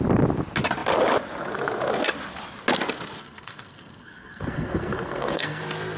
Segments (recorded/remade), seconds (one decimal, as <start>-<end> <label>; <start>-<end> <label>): 0.0-3.2 recorded; 3.2-5.6 remade; 5.6-6.0 recorded

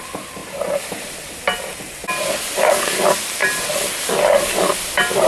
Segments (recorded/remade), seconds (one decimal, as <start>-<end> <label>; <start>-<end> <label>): 0.0-0.4 recorded; 0.4-1.3 remade; 1.3-5.3 recorded

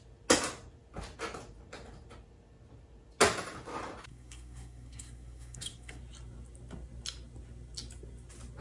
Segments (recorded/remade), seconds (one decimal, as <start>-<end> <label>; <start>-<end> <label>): 0.0-4.1 recorded; 4.1-6.0 remade; 6.0-8.6 recorded